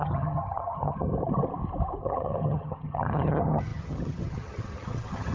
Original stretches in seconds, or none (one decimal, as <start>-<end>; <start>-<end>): 1.1-2.0